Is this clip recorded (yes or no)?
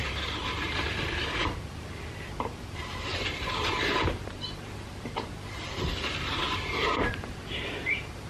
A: no